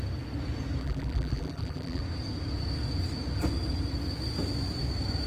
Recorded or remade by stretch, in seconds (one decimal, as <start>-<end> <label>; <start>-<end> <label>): 0.0-0.8 recorded; 0.8-2.0 remade; 2.0-5.3 recorded